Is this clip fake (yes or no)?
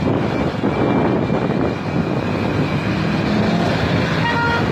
no